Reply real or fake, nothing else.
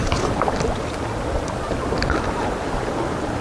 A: real